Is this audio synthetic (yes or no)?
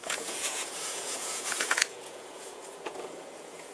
yes